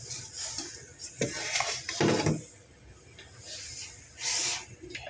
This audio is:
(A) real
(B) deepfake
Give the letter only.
A